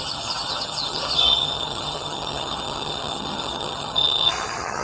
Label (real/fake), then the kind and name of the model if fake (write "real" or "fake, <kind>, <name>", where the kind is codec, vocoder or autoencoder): fake, vocoder, HiFi-GAN